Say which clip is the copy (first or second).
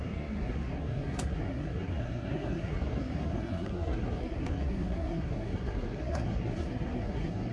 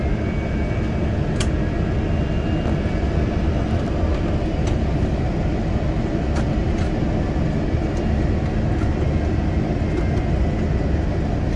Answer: first